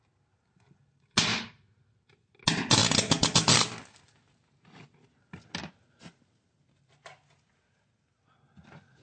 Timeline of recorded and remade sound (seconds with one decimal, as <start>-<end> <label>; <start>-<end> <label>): 0.0-9.0 recorded